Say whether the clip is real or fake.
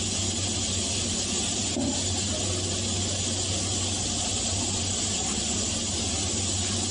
real